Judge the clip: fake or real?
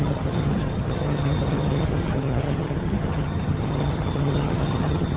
fake